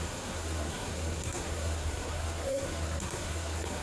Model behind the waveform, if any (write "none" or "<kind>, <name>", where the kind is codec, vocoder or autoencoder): codec, SNAC